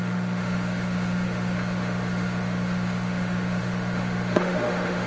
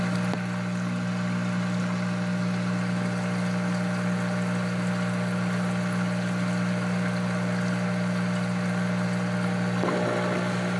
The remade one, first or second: first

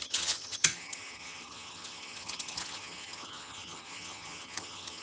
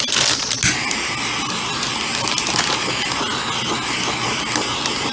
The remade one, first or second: first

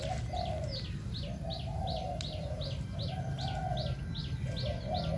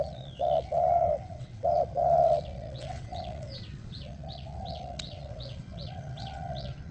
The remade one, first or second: second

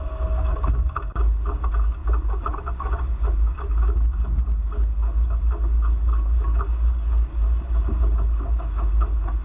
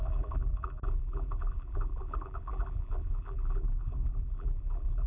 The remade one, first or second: second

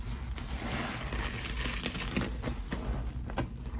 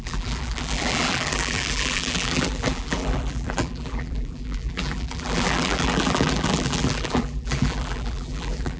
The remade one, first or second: second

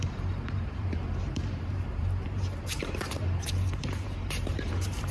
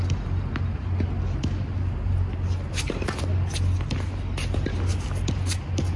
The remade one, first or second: first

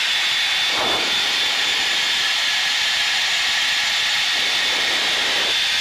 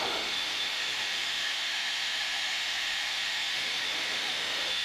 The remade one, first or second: second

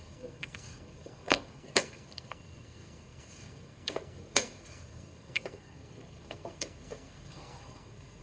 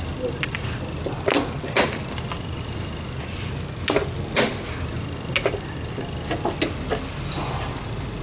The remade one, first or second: first